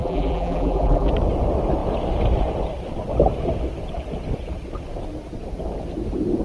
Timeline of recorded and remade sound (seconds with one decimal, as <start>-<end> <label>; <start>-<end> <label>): 0.0-1.1 remade; 1.1-6.4 recorded